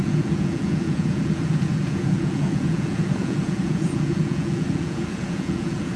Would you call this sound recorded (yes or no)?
no